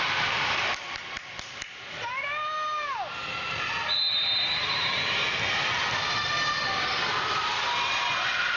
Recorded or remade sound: recorded